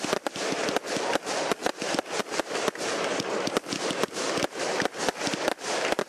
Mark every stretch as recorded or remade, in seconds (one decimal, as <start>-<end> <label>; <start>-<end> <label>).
0.0-6.1 recorded